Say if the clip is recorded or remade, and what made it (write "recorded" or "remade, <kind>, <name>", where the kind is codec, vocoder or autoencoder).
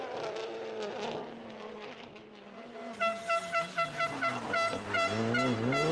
recorded